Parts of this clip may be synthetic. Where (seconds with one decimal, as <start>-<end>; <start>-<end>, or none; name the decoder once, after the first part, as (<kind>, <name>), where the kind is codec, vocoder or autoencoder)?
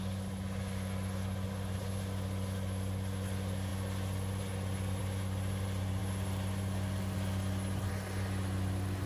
none